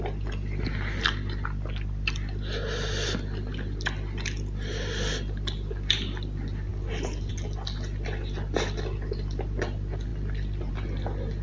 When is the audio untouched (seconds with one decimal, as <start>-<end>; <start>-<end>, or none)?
0.0-11.4